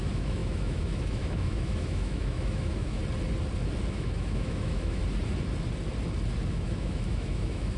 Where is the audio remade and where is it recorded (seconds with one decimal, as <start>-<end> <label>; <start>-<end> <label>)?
0.0-3.0 remade; 3.0-3.9 recorded; 3.9-5.0 remade; 5.0-6.5 recorded; 6.5-7.8 remade